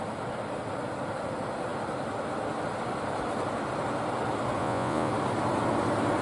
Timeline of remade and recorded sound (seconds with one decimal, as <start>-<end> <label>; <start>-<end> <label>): 0.0-4.6 recorded; 4.6-5.1 remade; 5.1-6.2 recorded